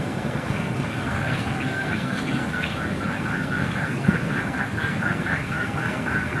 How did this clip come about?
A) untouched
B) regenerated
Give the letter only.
B